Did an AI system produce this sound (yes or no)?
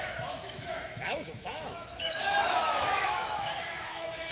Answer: yes